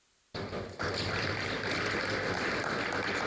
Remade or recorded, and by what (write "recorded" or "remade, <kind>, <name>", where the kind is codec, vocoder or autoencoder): recorded